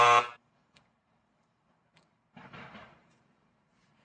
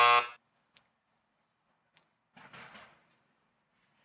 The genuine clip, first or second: second